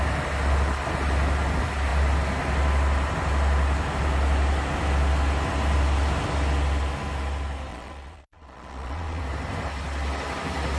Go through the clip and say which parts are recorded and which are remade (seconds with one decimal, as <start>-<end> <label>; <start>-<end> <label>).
0.0-7.7 recorded; 7.7-9.2 remade; 9.2-10.8 recorded